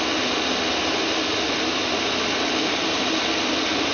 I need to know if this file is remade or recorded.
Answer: recorded